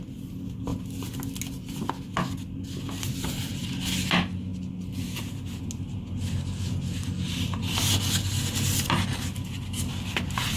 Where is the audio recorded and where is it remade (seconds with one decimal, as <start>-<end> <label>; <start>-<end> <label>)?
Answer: 0.0-10.6 recorded